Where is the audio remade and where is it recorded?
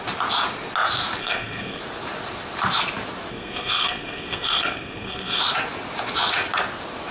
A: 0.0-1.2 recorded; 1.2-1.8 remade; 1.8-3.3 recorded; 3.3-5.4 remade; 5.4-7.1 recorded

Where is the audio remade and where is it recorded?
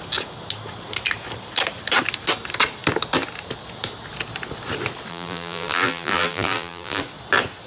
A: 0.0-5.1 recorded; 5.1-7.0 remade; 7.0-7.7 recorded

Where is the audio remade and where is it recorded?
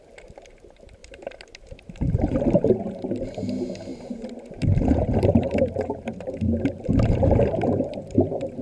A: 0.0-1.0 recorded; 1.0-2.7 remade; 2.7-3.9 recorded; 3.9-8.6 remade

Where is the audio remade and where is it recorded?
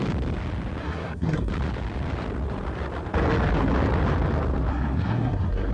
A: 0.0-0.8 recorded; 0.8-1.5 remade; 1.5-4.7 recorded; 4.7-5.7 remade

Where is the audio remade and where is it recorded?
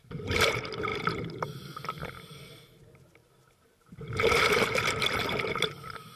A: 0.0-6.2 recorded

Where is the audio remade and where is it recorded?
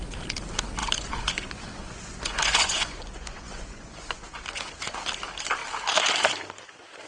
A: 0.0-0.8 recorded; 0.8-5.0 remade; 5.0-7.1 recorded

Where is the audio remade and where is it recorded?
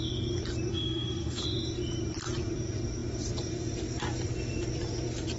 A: 0.0-0.7 recorded; 0.7-1.4 remade; 1.4-5.4 recorded